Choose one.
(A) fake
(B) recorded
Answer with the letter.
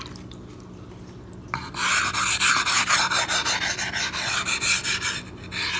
B